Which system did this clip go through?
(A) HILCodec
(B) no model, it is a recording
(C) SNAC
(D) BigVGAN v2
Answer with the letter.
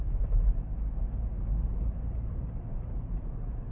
D